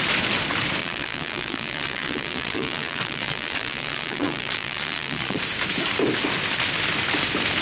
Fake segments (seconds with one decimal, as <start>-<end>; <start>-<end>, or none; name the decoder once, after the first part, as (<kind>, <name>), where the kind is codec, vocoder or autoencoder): 0.8-5.4 (vocoder, Vocos)